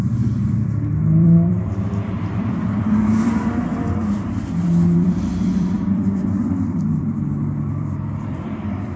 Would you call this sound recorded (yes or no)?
no